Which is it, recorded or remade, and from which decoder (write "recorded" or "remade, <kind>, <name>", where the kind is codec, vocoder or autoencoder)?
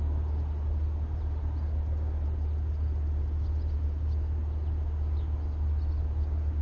recorded